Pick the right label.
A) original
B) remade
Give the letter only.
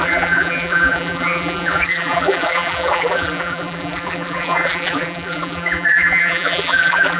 B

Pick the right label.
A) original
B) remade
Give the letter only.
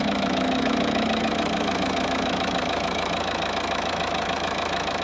B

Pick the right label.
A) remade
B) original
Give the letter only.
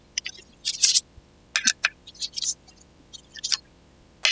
B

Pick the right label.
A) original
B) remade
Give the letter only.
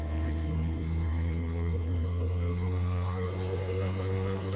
B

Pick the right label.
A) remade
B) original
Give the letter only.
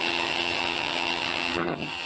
A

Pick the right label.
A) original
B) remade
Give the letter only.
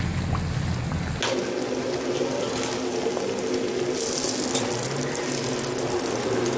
A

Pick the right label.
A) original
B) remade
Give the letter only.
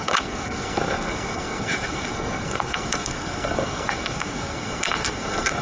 B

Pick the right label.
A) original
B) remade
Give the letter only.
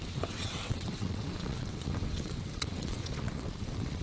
B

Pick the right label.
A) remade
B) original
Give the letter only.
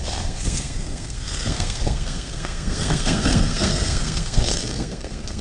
A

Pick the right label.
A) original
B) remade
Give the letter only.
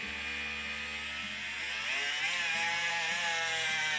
A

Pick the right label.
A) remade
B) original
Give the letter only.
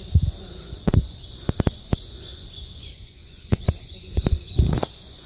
A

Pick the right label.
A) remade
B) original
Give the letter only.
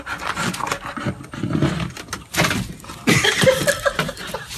B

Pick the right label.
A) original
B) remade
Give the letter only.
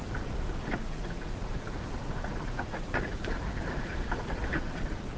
B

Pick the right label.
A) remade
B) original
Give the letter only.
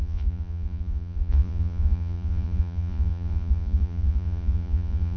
A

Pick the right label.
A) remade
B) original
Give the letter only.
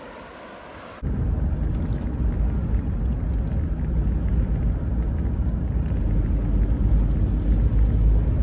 B